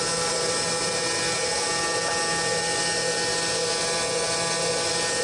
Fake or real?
real